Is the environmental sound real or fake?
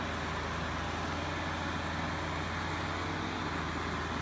real